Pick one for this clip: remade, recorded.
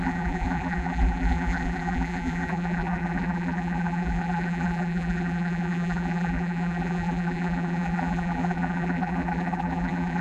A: remade